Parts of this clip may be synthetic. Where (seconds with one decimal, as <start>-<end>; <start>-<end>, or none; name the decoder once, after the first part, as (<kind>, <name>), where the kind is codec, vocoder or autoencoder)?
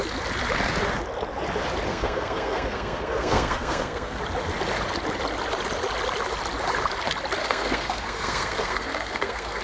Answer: 1.9-4.2 (codec, SNAC); 7.4-9.6